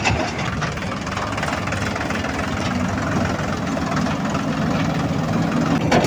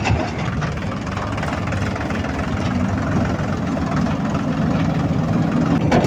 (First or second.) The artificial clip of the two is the second